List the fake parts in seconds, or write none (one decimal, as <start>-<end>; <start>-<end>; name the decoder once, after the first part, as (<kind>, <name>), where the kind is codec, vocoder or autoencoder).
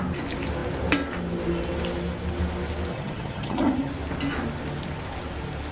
2.9-3.9 (vocoder, HiFi-GAN)